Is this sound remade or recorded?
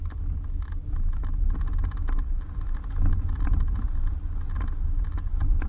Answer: recorded